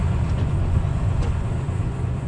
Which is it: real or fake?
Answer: fake